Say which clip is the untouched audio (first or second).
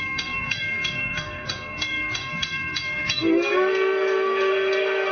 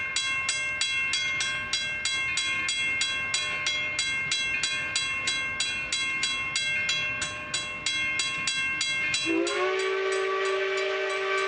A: second